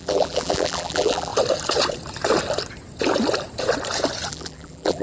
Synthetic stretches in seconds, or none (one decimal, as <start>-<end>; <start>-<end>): 0.0-1.3; 4.3-5.0